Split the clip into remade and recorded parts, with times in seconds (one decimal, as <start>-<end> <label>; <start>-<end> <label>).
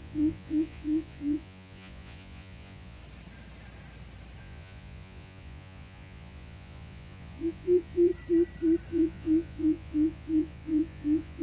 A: 0.0-3.0 remade; 3.0-4.4 recorded; 4.4-8.1 remade; 8.1-8.9 recorded; 8.9-11.4 remade